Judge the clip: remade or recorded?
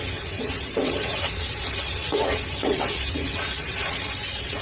remade